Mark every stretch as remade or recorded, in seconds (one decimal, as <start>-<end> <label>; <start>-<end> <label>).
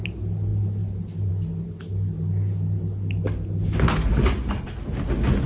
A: 0.0-5.5 recorded